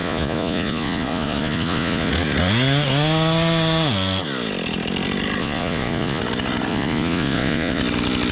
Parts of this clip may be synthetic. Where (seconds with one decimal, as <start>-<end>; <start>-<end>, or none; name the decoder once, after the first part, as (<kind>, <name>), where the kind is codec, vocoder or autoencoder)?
0.0-2.1 (vocoder, Vocos); 5.4-6.2; 6.7-7.8